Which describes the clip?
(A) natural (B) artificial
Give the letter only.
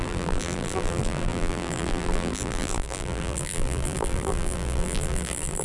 B